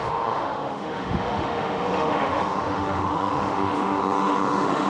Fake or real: fake